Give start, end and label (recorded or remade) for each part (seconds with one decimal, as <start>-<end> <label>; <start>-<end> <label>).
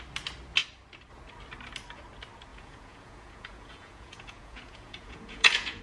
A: 0.0-2.5 recorded; 2.5-5.8 remade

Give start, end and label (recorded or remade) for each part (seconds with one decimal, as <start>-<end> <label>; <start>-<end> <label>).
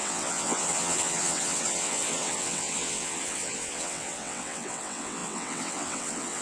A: 0.0-6.4 remade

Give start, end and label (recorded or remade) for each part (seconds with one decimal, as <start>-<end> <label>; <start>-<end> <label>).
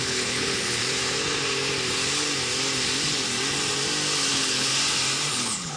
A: 0.0-0.8 remade; 0.8-4.3 recorded; 4.3-4.7 remade; 4.7-5.3 recorded; 5.3-5.8 remade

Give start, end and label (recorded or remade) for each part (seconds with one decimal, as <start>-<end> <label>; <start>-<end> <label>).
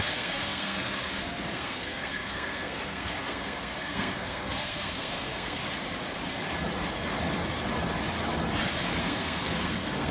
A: 0.0-5.6 remade; 5.6-9.0 recorded; 9.0-10.1 remade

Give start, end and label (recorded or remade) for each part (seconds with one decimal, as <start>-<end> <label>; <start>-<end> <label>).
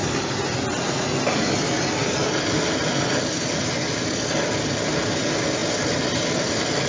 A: 0.0-6.9 recorded